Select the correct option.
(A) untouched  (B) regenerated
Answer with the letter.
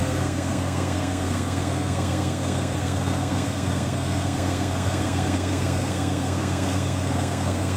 B